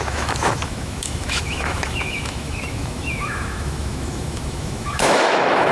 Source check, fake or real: fake